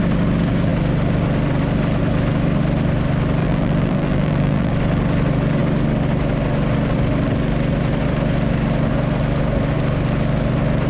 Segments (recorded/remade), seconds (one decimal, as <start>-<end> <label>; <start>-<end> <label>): 0.0-3.4 recorded; 3.4-4.7 remade; 4.7-10.9 recorded